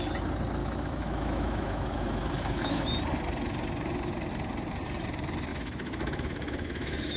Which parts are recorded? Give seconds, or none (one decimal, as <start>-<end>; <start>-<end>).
0.0-0.6; 2.9-5.5